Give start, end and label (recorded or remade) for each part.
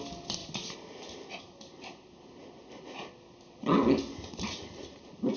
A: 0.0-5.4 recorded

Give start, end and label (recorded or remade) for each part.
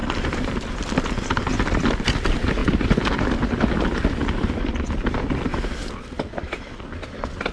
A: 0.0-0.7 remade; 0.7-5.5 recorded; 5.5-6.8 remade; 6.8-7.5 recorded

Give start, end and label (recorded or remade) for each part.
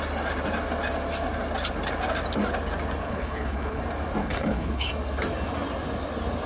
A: 0.0-3.0 recorded; 3.0-3.8 remade; 3.8-4.2 recorded; 4.2-4.9 remade; 4.9-6.5 recorded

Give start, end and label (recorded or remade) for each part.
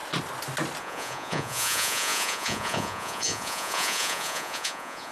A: 0.0-0.8 recorded; 0.8-5.1 remade